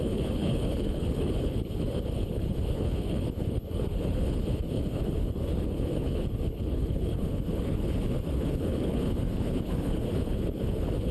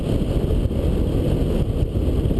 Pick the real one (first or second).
second